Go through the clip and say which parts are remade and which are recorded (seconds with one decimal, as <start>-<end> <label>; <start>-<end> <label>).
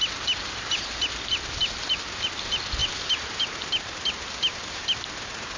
0.0-5.6 recorded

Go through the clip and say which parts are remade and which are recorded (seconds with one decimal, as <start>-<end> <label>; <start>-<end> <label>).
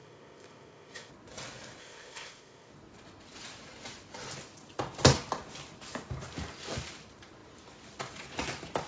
0.0-1.1 remade; 1.1-1.8 recorded; 1.8-2.7 remade; 2.7-8.9 recorded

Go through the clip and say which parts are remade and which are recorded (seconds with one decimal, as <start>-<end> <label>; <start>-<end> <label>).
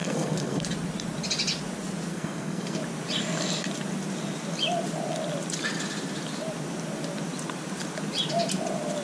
0.0-0.6 remade; 0.6-2.1 recorded; 2.1-2.8 remade; 2.8-9.0 recorded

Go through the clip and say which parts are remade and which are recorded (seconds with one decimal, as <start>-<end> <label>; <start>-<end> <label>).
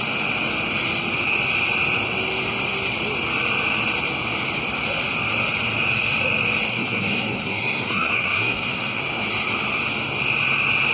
0.0-6.7 recorded; 6.7-9.0 remade; 9.0-10.9 recorded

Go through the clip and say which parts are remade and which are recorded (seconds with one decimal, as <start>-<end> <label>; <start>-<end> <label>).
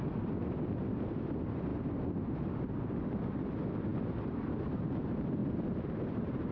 0.0-1.7 remade; 1.7-2.6 recorded; 2.6-6.5 remade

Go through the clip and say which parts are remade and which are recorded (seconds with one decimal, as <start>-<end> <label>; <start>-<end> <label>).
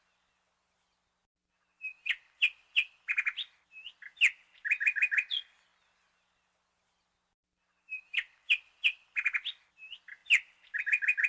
0.0-11.3 recorded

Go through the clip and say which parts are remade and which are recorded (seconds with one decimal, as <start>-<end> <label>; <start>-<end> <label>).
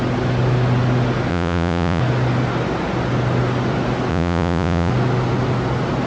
0.0-1.3 recorded; 1.3-2.0 remade; 2.0-4.1 recorded; 4.1-4.9 remade; 4.9-6.1 recorded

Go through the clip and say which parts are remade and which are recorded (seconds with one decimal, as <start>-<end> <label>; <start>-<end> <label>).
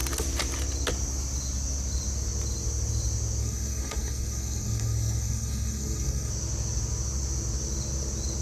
0.0-3.4 recorded; 3.4-6.3 remade; 6.3-8.4 recorded